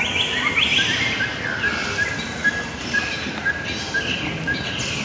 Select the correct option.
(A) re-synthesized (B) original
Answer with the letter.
B